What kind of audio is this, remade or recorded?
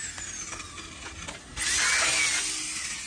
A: recorded